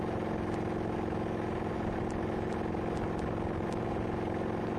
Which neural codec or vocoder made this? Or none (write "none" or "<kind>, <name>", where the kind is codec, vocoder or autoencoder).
none